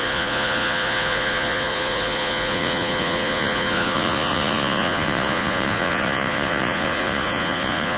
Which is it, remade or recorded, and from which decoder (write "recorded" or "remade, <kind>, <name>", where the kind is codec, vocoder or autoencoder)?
remade, vocoder, Vocos